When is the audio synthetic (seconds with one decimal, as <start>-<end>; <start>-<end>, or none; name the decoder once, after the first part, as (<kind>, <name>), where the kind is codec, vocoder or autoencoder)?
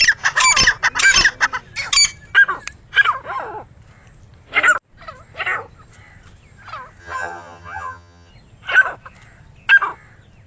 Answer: 7.0-8.3 (vocoder, HiFi-GAN)